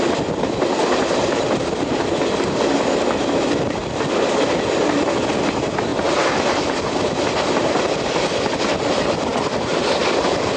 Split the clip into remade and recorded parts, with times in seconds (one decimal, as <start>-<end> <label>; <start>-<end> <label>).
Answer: 0.0-10.6 recorded